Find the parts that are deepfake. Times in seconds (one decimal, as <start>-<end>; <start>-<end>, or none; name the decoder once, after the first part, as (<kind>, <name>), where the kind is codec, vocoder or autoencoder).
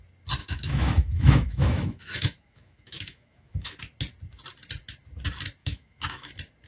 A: 0.4-3.8 (autoencoder, DAC-VAE); 5.6-6.3